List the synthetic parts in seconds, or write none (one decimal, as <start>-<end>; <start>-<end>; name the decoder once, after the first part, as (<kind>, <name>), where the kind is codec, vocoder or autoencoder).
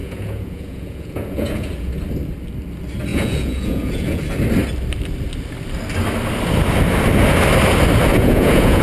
0.0-1.9 (vocoder, Vocos); 3.1-4.2; 8.1-8.8